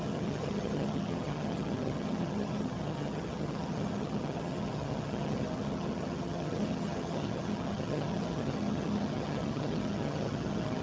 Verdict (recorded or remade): remade